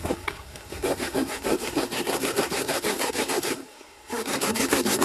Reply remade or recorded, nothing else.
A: remade